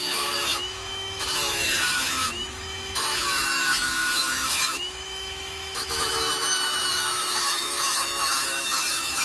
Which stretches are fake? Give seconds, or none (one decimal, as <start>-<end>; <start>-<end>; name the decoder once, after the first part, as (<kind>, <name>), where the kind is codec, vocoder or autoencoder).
0.0-9.2 (autoencoder, DAC-VAE)